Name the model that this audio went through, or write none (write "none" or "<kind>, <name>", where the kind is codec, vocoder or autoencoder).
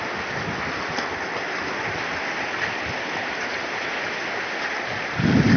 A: none